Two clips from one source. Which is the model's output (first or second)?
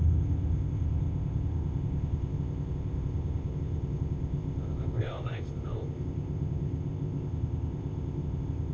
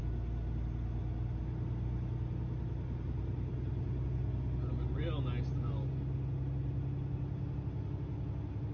first